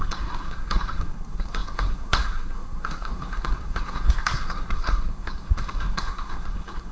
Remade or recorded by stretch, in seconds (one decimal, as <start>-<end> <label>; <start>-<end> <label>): 0.0-6.9 remade